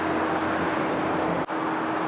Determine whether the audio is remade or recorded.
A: recorded